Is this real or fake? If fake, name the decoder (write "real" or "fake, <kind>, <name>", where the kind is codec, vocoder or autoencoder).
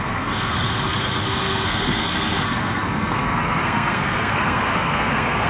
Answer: fake, codec, SNAC